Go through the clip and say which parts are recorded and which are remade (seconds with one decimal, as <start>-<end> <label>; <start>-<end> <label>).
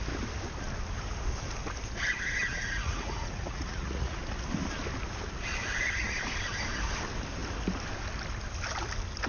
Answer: 0.0-2.5 recorded; 2.5-4.2 remade; 4.2-9.3 recorded